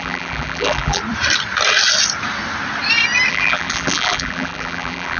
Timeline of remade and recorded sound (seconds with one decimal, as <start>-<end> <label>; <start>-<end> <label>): 0.0-1.0 remade; 1.0-3.3 recorded; 3.3-5.2 remade